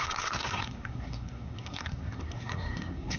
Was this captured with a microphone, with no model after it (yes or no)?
no